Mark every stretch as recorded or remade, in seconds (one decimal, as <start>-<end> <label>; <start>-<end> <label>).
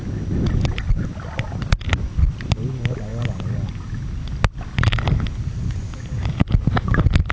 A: 0.0-7.3 recorded